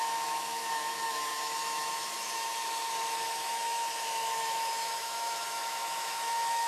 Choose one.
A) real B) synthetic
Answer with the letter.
B